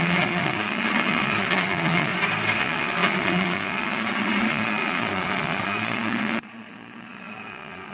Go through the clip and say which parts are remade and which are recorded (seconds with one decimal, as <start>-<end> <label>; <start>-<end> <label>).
0.0-2.1 remade; 2.1-2.6 recorded; 2.6-7.9 remade